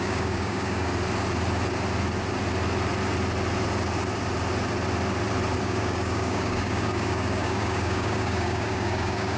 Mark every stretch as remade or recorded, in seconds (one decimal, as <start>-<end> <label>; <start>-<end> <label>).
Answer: 0.0-0.9 remade; 0.9-5.6 recorded; 5.6-9.4 remade

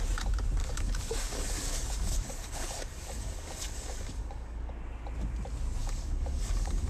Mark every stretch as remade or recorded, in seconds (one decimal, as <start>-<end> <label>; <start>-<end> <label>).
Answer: 0.0-0.6 recorded; 0.6-4.7 remade; 4.7-5.8 recorded; 5.8-6.9 remade

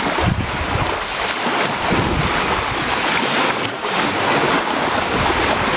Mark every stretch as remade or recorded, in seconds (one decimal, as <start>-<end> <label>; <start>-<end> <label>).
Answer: 0.0-3.8 recorded; 3.8-5.1 remade; 5.1-5.8 recorded

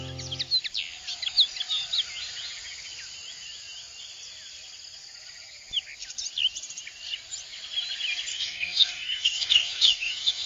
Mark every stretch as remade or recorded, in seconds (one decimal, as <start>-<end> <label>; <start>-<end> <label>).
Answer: 0.0-8.3 recorded; 8.3-10.5 remade

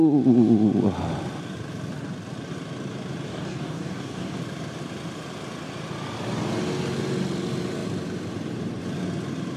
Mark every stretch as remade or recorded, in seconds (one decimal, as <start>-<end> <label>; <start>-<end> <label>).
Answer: 0.0-3.3 recorded; 3.3-4.4 remade; 4.4-9.6 recorded

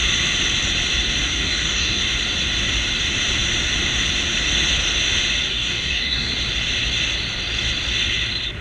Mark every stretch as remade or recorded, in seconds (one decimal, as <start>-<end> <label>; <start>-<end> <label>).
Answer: 0.0-1.3 recorded; 1.3-2.0 remade; 2.0-5.5 recorded; 5.5-6.3 remade; 6.3-8.6 recorded